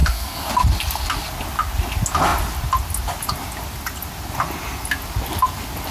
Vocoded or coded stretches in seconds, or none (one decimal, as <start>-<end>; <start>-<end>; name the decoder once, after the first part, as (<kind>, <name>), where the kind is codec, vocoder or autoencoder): 0.0-0.5 (codec, SNAC)